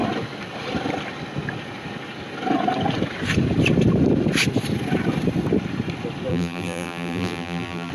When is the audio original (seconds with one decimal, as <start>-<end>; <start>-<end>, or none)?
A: 0.0-6.3